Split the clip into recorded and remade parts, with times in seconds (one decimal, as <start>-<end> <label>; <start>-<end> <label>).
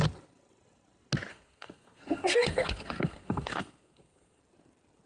0.0-1.3 recorded; 1.3-4.4 remade; 4.4-5.1 recorded